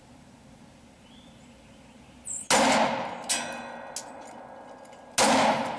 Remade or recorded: recorded